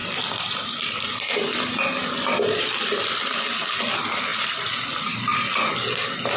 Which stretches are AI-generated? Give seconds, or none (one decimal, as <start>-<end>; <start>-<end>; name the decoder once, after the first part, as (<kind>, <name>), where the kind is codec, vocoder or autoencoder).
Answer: 0.0-3.6 (vocoder, BigVGAN v2); 4.3-5.0